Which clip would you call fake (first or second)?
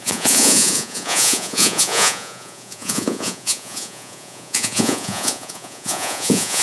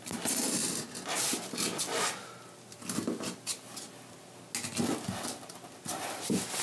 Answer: first